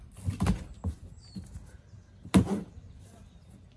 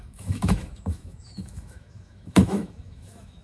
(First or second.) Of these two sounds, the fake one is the second